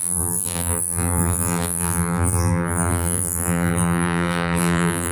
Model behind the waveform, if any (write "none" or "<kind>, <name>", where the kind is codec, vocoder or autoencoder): vocoder, BigVGAN v2